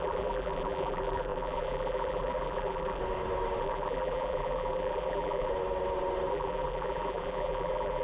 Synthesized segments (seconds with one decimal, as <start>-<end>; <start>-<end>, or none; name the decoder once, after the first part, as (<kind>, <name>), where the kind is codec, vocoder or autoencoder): 0.0-3.0 (vocoder, BigVGAN v2); 3.6-5.5; 6.3-8.0